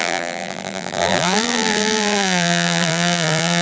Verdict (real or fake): fake